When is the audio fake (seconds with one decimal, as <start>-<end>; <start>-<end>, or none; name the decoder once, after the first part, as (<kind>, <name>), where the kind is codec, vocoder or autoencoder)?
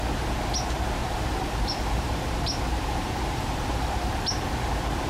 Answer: 1.0-4.1 (vocoder, BigVGAN v2)